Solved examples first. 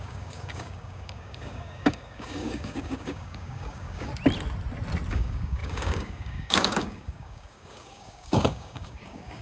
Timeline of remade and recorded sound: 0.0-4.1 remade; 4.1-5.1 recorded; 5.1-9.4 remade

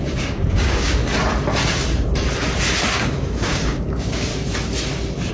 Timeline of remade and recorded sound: 0.0-1.0 remade; 1.0-2.9 recorded; 2.9-4.3 remade; 4.3-5.3 recorded

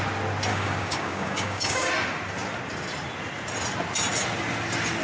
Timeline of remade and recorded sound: 0.0-0.5 recorded; 0.5-1.9 remade; 1.9-5.0 recorded

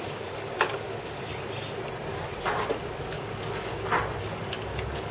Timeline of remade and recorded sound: 0.0-1.3 remade; 1.3-3.0 recorded; 3.0-3.7 remade; 3.7-4.2 recorded; 4.2-5.1 remade

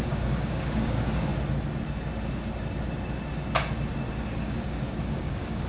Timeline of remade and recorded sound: 0.0-1.3 remade; 1.3-4.1 recorded; 4.1-5.7 remade

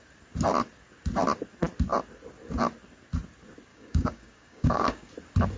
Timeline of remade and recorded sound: 0.0-3.7 recorded; 3.7-5.1 remade; 5.1-5.6 recorded

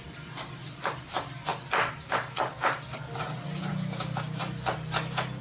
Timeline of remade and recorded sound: 0.0-3.7 recorded; 3.7-4.4 remade; 4.4-5.4 recorded